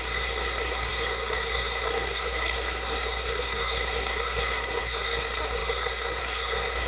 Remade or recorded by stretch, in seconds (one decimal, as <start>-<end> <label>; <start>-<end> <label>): 0.0-6.9 remade